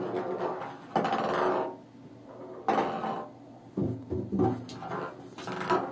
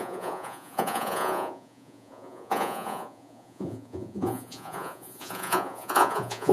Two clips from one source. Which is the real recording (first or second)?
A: first